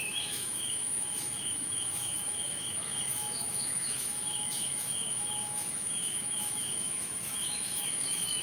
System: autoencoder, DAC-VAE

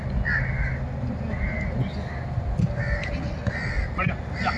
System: none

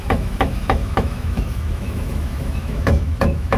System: autoencoder, DAC-VAE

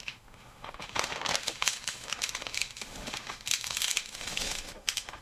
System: autoencoder, DAC-VAE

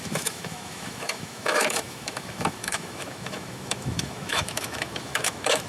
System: autoencoder, DAC-VAE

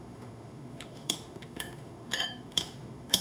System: autoencoder, DAC-VAE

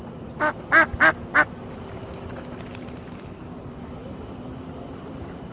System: none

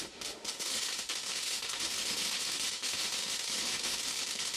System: autoencoder, DAC-VAE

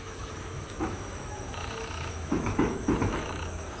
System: autoencoder, DAC-VAE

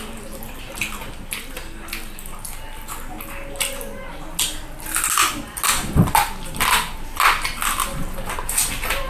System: none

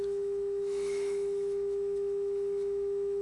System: autoencoder, DAC-VAE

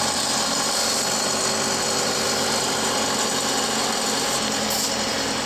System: none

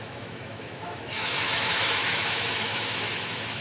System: autoencoder, DAC-VAE